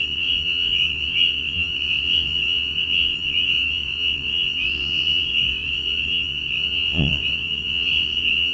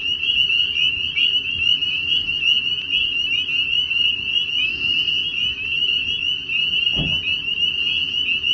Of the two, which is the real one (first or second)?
second